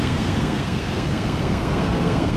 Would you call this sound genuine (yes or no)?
no